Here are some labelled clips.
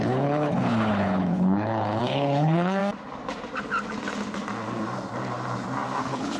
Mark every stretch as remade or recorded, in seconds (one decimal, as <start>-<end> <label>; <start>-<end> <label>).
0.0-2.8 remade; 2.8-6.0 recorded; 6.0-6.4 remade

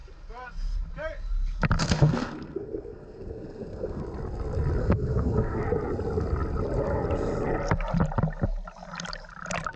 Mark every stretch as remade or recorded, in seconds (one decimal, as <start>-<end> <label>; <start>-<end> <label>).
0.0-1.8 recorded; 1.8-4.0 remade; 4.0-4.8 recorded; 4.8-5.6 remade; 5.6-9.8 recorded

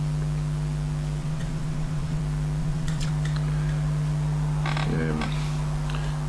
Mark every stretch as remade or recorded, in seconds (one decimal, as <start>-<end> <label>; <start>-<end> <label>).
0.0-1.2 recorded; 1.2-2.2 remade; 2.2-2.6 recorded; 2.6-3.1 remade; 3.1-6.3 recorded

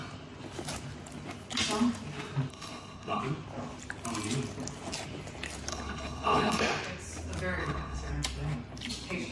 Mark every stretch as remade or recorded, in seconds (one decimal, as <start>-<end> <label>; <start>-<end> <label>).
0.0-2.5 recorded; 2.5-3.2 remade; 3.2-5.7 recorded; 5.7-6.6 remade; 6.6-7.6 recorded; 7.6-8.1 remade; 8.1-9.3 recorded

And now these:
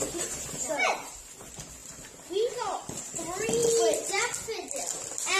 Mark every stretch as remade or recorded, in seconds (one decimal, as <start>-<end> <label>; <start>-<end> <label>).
0.0-1.8 remade; 1.8-2.5 recorded; 2.5-3.6 remade; 3.6-5.4 recorded

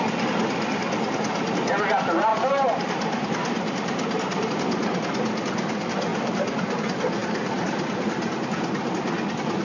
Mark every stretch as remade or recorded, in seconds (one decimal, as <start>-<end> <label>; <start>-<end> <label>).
0.0-2.3 recorded; 2.3-4.5 remade; 4.5-6.1 recorded; 6.1-6.8 remade; 6.8-7.2 recorded; 7.2-8.3 remade; 8.3-9.6 recorded

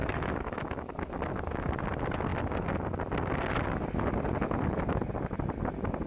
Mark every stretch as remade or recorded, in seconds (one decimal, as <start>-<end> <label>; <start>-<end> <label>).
0.0-0.9 remade; 0.9-6.1 recorded